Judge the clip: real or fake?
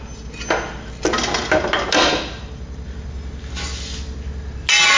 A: real